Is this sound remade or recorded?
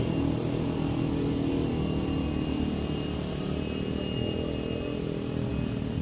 recorded